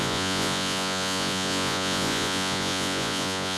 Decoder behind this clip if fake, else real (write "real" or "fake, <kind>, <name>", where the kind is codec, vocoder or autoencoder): fake, vocoder, Vocos